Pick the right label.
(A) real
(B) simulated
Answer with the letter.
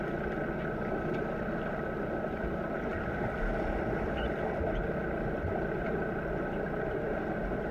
A